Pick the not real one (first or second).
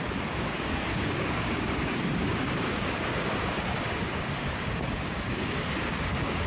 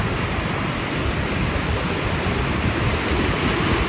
first